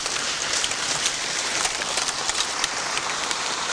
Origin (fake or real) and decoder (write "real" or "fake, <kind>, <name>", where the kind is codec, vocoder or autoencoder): fake, vocoder, BigVGAN v2